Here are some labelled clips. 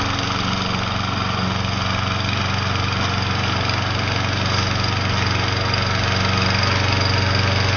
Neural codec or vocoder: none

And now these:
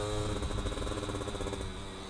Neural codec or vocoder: none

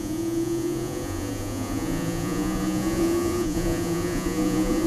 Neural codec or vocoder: vocoder, Vocos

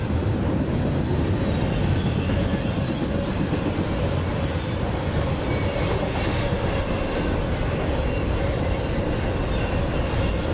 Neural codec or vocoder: none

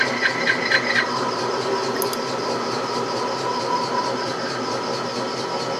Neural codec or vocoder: none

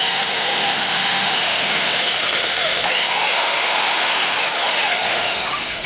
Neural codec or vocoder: autoencoder, DAC-VAE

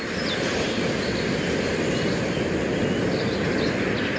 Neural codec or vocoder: none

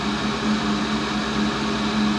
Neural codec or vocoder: none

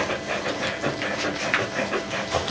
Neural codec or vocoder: none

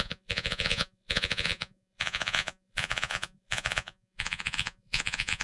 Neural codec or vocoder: vocoder, Vocos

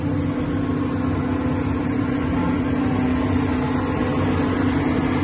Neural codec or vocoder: none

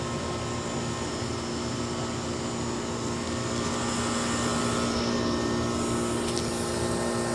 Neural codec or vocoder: none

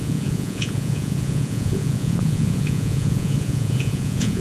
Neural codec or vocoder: vocoder, Vocos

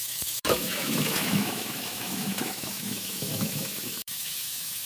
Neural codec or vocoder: autoencoder, DAC-VAE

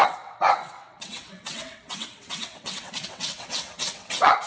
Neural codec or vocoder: vocoder, WaveNeXt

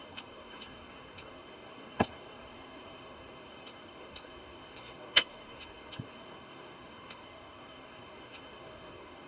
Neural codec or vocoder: codec, SNAC